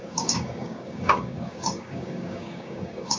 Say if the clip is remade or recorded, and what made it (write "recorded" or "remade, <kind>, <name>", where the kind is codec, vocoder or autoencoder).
remade, codec, DAC